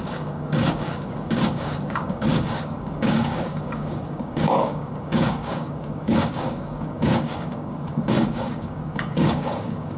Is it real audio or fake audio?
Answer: fake